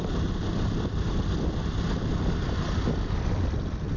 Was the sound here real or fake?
fake